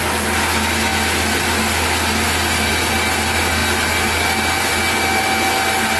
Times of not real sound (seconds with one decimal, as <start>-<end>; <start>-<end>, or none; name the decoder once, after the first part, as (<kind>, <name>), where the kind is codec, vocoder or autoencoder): none